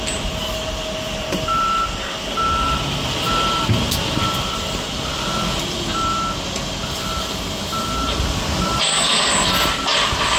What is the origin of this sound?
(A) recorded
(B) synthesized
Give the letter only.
A